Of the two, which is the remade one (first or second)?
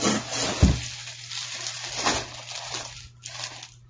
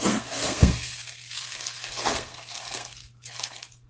second